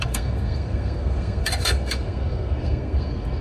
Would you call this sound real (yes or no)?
no